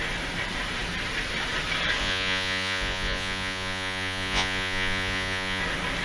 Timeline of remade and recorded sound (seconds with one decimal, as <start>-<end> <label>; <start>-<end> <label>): 0.0-2.0 recorded; 2.0-5.6 remade; 5.6-6.0 recorded